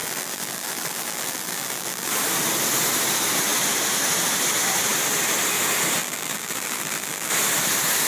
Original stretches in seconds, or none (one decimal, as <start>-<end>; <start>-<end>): 2.1-6.0; 7.3-8.1